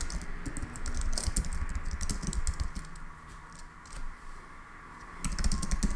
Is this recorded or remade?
recorded